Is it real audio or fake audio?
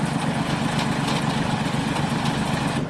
real